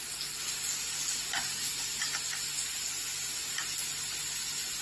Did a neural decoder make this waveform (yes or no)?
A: no